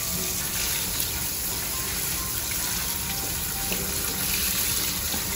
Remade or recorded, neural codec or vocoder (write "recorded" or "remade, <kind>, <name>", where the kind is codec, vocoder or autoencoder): recorded